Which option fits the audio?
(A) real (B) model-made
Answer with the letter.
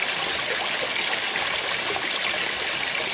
A